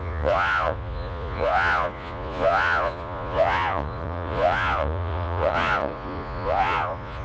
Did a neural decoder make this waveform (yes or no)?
yes